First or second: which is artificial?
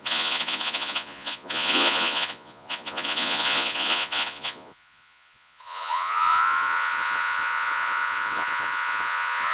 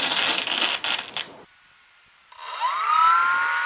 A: first